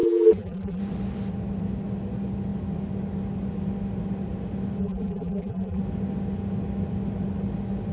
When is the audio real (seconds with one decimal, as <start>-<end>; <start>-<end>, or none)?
0.8-4.8; 5.8-7.9